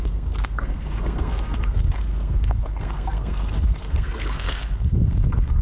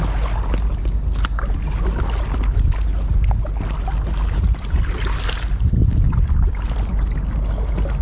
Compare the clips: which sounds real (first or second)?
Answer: second